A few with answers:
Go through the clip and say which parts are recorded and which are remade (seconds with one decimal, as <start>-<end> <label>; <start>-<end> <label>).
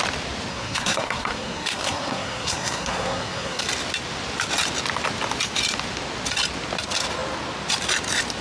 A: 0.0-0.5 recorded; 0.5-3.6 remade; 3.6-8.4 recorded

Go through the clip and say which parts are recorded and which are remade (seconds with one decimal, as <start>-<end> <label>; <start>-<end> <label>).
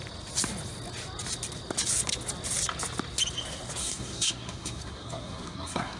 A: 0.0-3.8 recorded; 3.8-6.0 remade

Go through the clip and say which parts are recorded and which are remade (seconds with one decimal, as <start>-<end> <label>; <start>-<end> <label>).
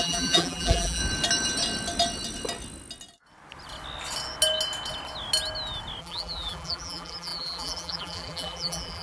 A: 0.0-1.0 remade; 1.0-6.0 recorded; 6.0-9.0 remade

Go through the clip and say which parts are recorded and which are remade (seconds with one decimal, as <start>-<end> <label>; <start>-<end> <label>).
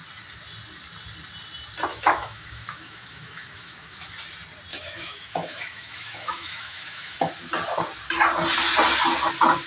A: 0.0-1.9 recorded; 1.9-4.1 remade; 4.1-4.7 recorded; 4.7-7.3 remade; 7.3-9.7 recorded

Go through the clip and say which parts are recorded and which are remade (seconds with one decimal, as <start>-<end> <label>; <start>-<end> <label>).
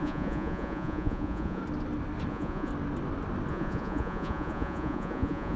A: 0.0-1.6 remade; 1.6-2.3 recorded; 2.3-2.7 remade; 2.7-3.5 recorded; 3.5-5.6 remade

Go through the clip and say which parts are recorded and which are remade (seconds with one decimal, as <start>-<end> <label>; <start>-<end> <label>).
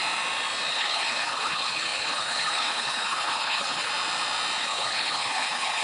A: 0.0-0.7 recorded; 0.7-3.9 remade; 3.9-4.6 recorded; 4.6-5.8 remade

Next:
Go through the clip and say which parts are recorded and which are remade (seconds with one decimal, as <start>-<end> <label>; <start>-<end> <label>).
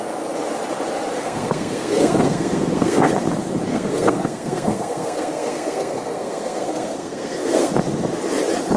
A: 0.0-1.2 recorded; 1.2-3.1 remade; 3.1-3.7 recorded; 3.7-7.7 remade; 7.7-8.8 recorded